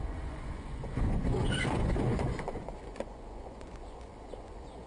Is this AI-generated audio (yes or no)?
yes